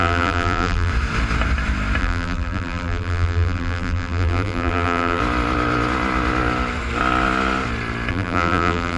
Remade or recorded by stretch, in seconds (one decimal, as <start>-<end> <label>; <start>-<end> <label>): 0.0-0.9 remade; 0.9-2.0 recorded; 2.0-5.2 remade; 5.2-8.1 recorded; 8.1-9.0 remade